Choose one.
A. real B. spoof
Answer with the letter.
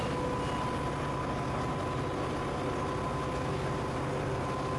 A